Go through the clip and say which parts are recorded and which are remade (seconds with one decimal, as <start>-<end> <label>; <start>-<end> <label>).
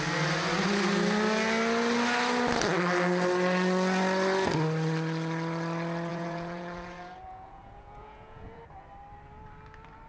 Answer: 0.0-6.1 recorded; 6.1-8.6 remade; 8.6-10.1 recorded